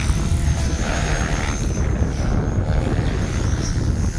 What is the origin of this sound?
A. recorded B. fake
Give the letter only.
A